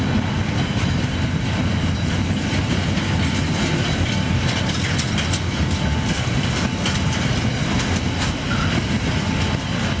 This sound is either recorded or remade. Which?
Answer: recorded